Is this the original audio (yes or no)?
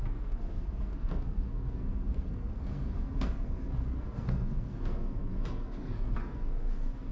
no